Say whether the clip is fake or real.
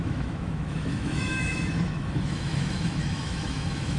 fake